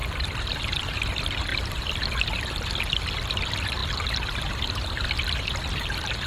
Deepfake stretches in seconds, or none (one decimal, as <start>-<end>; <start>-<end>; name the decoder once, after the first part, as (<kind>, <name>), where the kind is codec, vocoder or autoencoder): none